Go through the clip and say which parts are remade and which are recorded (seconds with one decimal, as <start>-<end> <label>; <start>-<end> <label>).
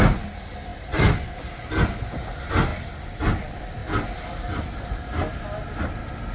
0.0-0.7 recorded; 0.7-1.7 remade; 1.7-6.3 recorded